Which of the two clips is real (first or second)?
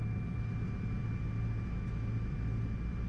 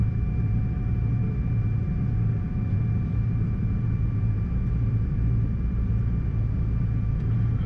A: first